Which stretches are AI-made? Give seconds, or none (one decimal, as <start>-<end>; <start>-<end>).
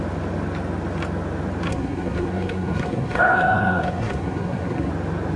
1.7-4.9